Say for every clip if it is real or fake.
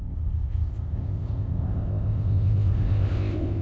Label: fake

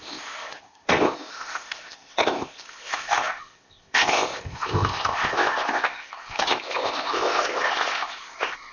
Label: fake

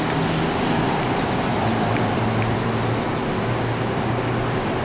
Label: real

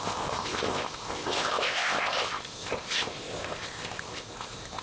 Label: fake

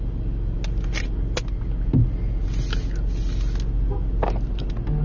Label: real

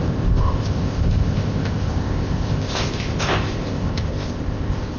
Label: fake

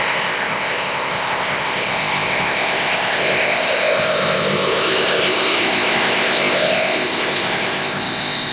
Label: fake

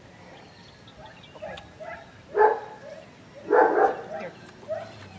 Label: real